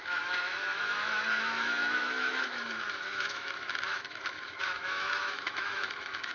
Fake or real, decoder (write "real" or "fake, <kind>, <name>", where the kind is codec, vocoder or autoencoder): fake, autoencoder, DAC-VAE